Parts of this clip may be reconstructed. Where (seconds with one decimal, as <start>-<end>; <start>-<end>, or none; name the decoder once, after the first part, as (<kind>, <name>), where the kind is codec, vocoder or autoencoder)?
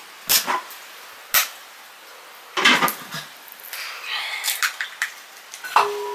none